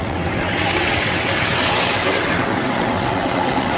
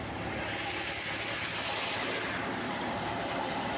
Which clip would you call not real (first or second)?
first